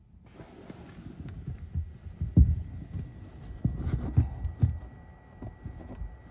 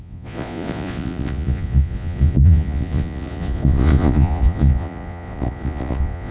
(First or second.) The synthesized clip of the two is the second